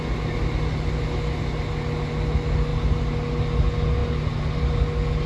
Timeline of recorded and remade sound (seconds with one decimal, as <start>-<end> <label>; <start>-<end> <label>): 0.0-5.3 recorded